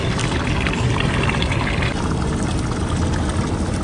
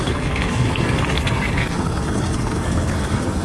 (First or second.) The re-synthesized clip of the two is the second